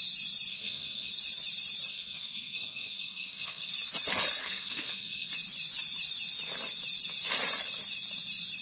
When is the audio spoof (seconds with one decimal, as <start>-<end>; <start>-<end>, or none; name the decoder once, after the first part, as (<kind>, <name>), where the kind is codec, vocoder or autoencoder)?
0.5-1.1 (codec, SNAC); 1.9-3.7; 4.4-5.3

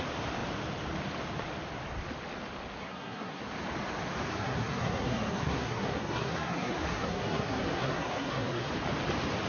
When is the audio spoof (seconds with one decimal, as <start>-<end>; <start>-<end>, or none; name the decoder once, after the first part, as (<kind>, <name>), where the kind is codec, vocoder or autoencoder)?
2.8-3.4 (codec, SNAC); 4.3-8.7

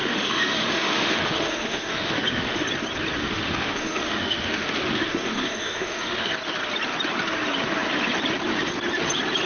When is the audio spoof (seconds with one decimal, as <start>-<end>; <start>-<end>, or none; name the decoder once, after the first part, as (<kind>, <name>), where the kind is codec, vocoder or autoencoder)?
0.0-2.6 (autoencoder, DAC-VAE); 3.2-6.3